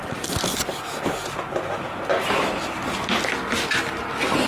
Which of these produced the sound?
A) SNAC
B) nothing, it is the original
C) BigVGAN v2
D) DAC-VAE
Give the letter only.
B